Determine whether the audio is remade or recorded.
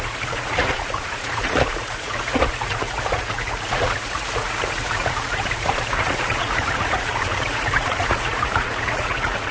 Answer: remade